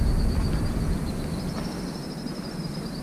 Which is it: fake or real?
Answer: real